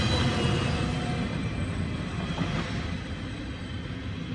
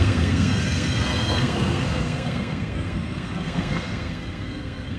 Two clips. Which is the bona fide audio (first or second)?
first